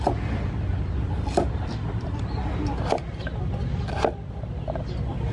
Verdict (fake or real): real